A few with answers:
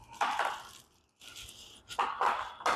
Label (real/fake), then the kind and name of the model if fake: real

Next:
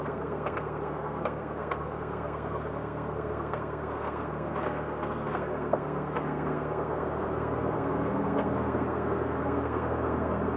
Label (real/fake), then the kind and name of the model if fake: fake, codec, SNAC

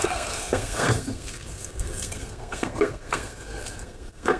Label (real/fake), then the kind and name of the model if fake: fake, codec, SNAC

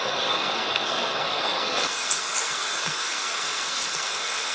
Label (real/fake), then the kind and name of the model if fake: fake, codec, SNAC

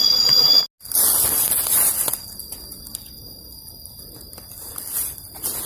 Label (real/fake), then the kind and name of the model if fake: real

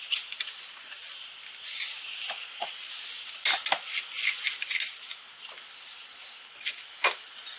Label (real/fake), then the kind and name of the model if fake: real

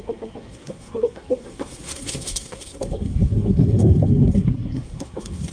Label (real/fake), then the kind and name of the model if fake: fake, codec, SNAC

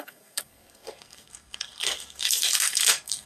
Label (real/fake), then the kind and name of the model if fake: fake, codec, SNAC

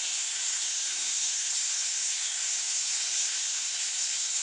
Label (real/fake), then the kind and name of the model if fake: fake, codec, SNAC